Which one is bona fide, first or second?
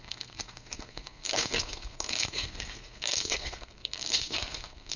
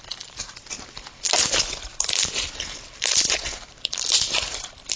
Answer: second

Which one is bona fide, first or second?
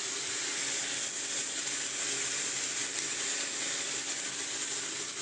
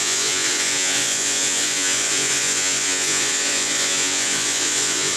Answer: first